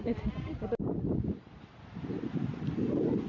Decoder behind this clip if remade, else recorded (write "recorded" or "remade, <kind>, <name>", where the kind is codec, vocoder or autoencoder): recorded